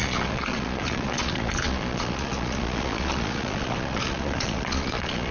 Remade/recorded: remade